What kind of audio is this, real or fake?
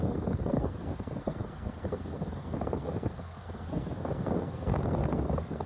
fake